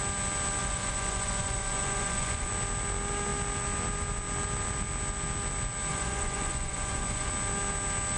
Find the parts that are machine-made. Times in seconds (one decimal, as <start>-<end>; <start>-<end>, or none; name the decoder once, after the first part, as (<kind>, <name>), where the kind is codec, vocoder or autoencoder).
0.6-2.5 (vocoder, Vocos); 5.9-7.3